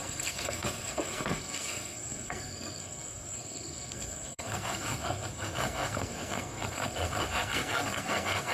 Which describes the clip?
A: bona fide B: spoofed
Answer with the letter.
B